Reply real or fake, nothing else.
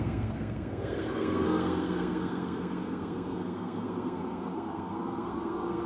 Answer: fake